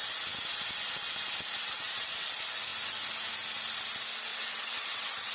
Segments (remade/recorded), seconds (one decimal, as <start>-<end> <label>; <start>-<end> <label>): 0.0-1.6 recorded; 1.6-2.3 remade; 2.3-4.3 recorded; 4.3-5.3 remade